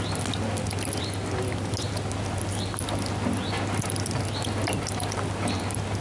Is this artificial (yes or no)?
no